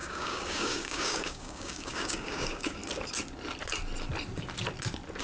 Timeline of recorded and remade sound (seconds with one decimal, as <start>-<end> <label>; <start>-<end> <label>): 0.0-2.8 remade; 2.8-5.2 recorded